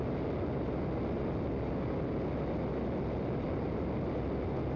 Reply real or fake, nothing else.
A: real